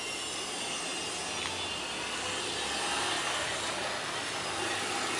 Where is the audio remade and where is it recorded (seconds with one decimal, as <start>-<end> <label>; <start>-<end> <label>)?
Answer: 0.0-5.2 recorded